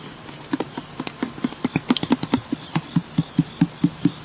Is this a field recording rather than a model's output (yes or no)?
yes